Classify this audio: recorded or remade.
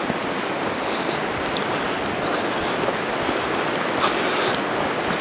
recorded